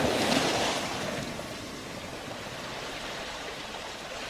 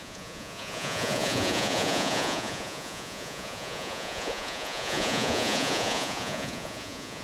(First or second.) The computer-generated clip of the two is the second